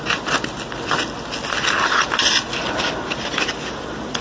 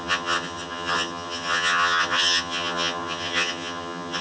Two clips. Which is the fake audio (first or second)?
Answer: second